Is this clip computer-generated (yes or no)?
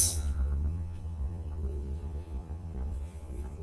yes